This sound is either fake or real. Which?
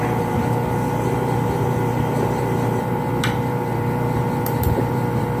fake